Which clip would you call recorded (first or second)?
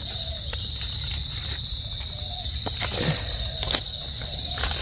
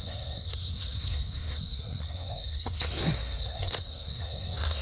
first